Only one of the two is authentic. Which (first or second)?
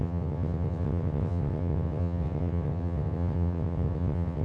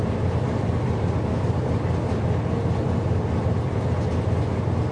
second